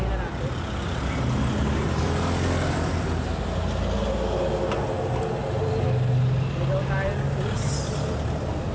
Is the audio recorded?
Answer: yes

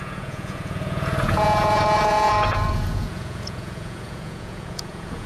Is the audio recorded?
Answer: no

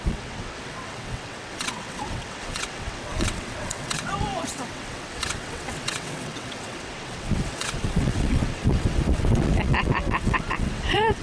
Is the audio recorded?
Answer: no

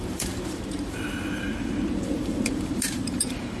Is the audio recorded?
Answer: no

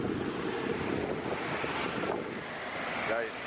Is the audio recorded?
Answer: yes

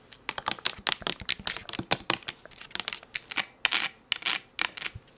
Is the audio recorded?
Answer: yes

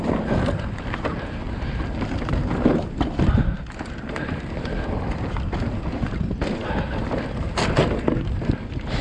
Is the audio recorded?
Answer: yes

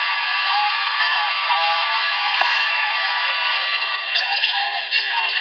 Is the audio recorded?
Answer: no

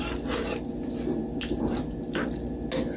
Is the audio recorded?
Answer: yes